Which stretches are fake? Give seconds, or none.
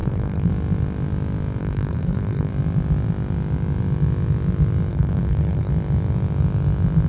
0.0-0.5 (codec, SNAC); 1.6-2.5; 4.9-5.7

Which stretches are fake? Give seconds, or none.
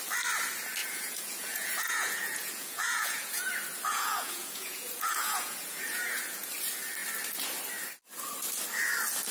0.8-3.5 (vocoder, Vocos); 3.9-6.5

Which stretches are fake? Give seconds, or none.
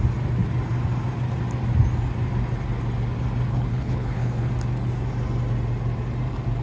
3.5-4.5 (codec, HILCodec)